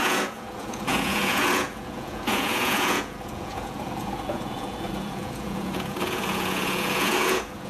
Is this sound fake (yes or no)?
yes